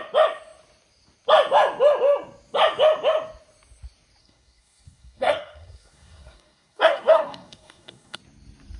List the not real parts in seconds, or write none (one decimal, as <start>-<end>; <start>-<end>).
4.2-8.2